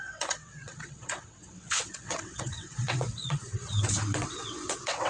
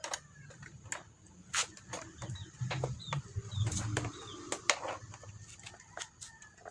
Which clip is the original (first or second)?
second